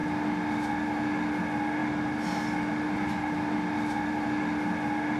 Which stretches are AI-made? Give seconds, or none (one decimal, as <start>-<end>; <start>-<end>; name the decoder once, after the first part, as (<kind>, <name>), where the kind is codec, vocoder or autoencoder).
1.8-5.2 (vocoder, BigVGAN v2)